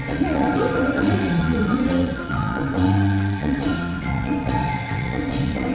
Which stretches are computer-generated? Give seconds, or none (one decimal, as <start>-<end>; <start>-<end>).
0.0-5.7